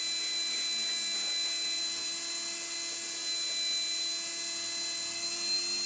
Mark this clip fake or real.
real